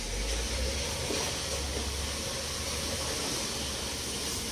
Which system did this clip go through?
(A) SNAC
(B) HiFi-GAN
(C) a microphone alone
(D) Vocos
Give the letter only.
C